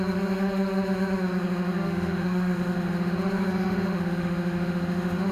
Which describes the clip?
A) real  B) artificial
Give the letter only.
B